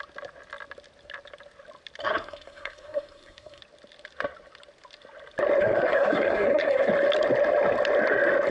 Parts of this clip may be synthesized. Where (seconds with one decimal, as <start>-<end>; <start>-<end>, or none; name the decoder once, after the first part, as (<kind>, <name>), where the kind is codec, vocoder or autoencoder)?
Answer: 2.0-3.6 (codec, SNAC); 5.6-6.9